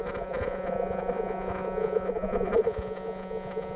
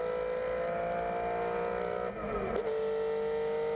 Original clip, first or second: second